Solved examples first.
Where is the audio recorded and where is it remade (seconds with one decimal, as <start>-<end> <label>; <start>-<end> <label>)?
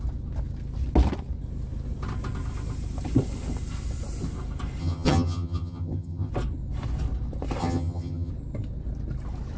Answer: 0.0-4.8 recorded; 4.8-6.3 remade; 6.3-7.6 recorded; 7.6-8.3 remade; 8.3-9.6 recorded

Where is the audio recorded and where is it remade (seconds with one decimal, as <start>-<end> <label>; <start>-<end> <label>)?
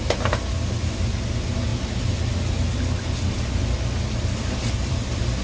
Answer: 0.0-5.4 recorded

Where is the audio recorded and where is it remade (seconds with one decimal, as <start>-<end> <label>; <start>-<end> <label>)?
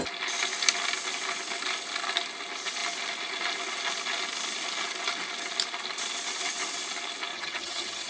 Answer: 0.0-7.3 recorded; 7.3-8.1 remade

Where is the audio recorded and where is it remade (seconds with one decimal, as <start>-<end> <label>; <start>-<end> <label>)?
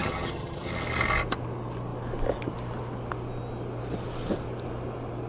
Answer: 0.0-0.7 remade; 0.7-5.3 recorded